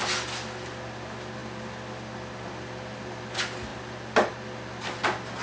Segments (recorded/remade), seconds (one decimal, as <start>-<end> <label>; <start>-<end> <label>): 0.0-5.4 recorded